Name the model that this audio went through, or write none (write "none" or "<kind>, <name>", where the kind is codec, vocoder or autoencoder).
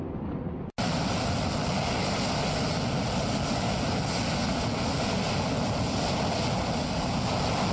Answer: none